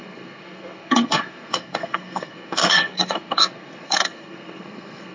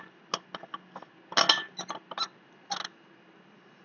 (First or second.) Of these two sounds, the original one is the second